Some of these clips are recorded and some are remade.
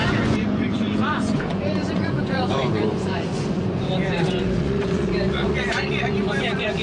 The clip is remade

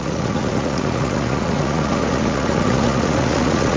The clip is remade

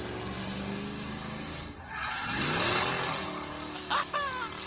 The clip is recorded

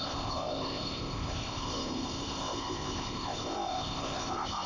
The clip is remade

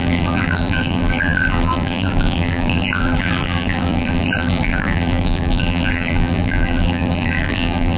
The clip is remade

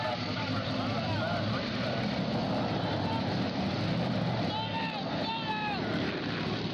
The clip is recorded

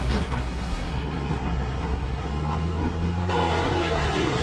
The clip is remade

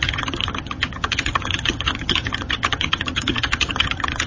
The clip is remade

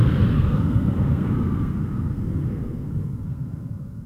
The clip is remade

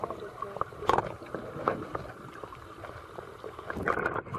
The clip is recorded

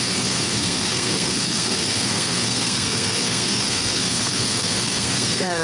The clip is remade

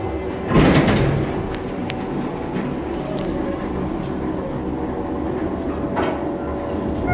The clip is recorded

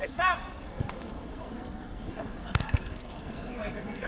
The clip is remade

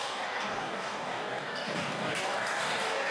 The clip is remade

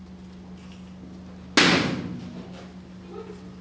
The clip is recorded